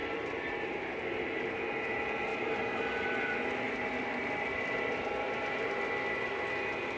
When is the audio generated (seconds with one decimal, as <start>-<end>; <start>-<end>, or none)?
none